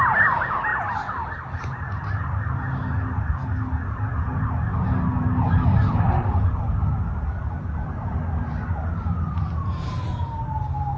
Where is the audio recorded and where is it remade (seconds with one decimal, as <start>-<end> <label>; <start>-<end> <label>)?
0.0-11.0 recorded